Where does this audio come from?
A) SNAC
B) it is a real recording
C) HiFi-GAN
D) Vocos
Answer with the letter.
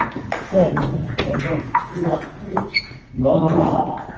D